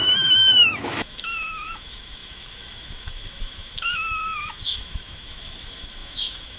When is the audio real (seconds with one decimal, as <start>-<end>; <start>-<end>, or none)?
none